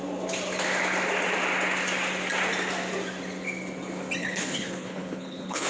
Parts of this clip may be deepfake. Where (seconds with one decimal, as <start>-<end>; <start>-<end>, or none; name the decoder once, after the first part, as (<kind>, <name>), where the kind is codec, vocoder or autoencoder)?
4.2-5.7 (codec, HILCodec)